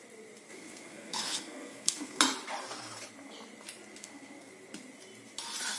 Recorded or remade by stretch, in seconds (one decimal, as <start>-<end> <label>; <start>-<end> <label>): 0.0-0.5 recorded; 0.5-2.2 remade; 2.2-4.0 recorded; 4.0-4.5 remade; 4.5-5.8 recorded